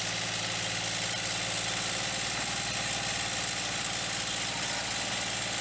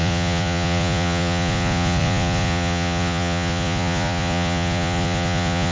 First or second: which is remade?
second